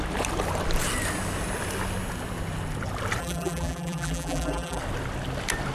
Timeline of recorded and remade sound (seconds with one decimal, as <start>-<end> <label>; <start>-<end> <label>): 0.0-3.2 recorded; 3.2-4.8 remade; 4.8-5.7 recorded